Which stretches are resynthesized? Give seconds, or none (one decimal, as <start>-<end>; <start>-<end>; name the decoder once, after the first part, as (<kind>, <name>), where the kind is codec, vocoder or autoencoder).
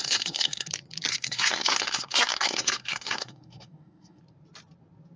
0.0-0.7 (codec, SNAC); 1.1-4.2